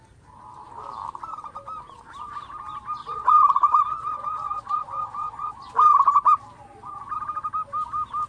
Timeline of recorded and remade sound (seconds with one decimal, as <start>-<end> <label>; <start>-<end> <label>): 0.0-3.0 recorded; 3.0-5.5 remade; 5.5-8.3 recorded